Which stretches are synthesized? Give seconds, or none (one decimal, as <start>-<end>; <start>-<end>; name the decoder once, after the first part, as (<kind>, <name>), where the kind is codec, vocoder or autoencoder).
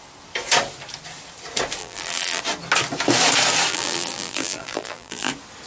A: 1.8-2.4 (vocoder, BigVGAN v2); 3.7-5.3